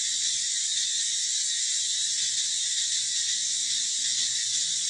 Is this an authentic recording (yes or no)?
yes